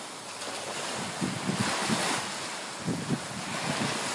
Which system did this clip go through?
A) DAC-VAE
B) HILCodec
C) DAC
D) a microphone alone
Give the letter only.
D